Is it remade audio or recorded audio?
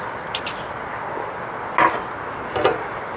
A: recorded